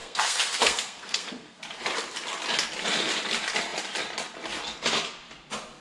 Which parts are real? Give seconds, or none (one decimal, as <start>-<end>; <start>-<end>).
1.6-5.8